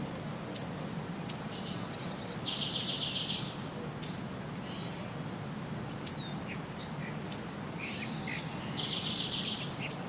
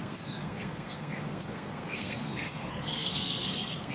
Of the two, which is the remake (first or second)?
second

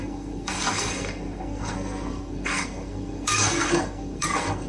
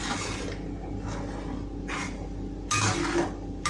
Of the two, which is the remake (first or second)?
first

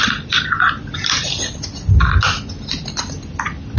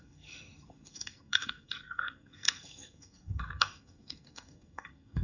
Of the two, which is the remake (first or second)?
second